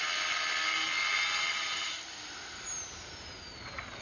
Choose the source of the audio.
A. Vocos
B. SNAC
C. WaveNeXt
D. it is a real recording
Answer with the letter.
D